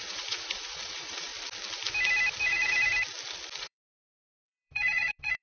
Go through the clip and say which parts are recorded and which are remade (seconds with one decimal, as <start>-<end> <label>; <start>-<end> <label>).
0.0-1.3 remade; 1.3-2.4 recorded; 2.4-2.9 remade; 2.9-3.6 recorded; 3.6-5.4 remade

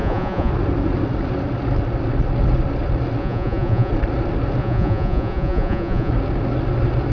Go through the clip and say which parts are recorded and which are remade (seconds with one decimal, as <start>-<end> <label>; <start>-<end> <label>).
0.0-0.5 remade; 0.5-3.2 recorded; 3.2-3.9 remade; 3.9-4.6 recorded; 4.6-6.1 remade; 6.1-7.1 recorded